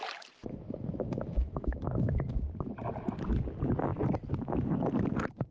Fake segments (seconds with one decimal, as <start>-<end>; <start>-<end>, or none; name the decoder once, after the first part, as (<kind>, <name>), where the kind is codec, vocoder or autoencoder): 0.4-2.3 (autoencoder, DAC-VAE)